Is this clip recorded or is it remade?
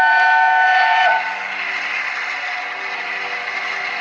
recorded